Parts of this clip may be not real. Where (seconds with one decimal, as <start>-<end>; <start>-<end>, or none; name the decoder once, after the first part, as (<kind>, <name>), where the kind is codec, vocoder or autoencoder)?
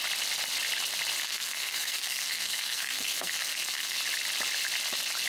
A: 1.2-4.0 (codec, SNAC)